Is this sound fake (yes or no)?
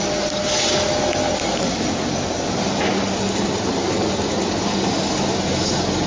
no